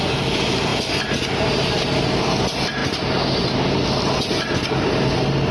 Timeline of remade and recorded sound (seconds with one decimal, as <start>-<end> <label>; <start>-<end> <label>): 0.0-5.5 recorded